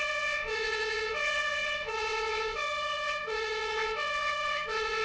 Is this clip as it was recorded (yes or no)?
no